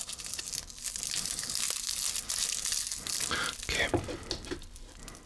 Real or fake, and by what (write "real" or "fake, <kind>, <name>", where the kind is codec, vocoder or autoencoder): real